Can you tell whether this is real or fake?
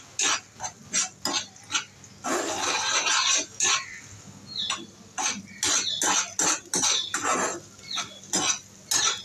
real